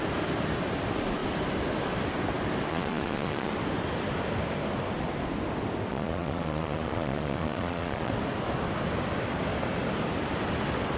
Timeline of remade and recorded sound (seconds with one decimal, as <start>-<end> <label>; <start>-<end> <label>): 0.0-2.7 recorded; 2.7-3.5 remade; 3.5-5.9 recorded; 5.9-8.1 remade; 8.1-11.0 recorded